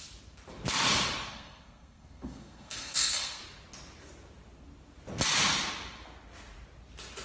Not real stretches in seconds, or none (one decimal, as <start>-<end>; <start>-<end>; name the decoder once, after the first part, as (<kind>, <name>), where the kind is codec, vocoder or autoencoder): 1.3-3.4 (codec, SNAC)